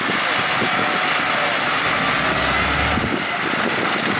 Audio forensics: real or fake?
real